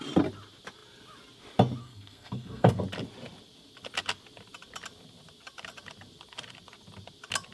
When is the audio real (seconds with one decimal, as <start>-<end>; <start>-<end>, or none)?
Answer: 0.0-1.8; 2.8-7.5